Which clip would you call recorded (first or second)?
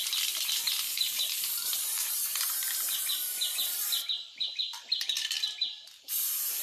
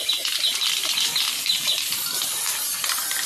second